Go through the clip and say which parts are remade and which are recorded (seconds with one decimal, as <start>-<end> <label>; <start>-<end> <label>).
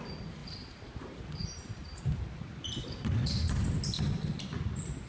0.0-0.4 recorded; 0.4-2.0 remade; 2.0-5.1 recorded